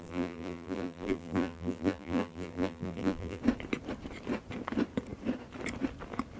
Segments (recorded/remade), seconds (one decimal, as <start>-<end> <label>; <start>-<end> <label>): 0.0-3.4 remade; 3.4-6.4 recorded